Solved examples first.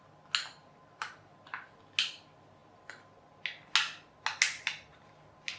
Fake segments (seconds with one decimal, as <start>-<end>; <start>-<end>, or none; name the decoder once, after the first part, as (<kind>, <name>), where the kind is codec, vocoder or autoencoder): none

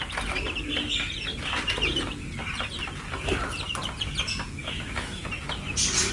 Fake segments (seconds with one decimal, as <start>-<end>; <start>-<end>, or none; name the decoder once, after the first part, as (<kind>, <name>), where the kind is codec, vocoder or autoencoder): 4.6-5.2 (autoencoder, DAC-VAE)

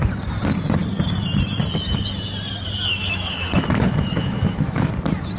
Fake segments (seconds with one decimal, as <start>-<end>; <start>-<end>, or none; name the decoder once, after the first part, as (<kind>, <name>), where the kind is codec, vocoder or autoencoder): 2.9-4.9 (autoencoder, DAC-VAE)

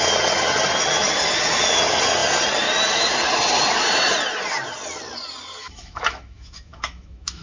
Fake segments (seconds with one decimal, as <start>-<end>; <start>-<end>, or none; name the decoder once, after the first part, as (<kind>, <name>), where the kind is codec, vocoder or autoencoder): 5.6-7.4 (autoencoder, DAC-VAE)

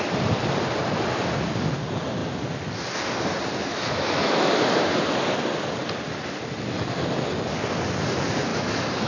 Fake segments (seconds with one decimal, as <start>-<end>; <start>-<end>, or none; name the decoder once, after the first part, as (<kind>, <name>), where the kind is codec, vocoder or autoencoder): 3.7-4.5 (autoencoder, DAC-VAE); 8.5-9.1

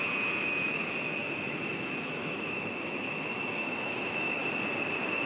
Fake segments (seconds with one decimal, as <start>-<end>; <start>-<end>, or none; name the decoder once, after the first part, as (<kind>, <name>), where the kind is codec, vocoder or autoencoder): 0.0-4.4 (autoencoder, DAC-VAE)

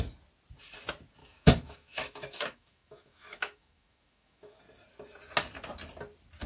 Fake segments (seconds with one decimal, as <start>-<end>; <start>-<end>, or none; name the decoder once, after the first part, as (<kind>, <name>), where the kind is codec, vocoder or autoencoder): 1.2-4.6 (autoencoder, DAC-VAE)

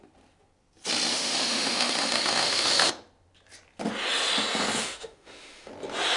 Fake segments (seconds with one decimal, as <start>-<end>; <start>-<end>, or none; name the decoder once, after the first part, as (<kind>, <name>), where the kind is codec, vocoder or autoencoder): 1.1-2.9 (autoencoder, DAC-VAE); 4.8-5.7